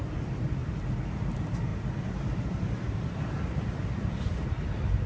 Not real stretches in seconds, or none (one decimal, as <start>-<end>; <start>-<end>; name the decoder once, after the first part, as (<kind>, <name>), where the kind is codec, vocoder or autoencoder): 1.7-4.5 (vocoder, BigVGAN v2)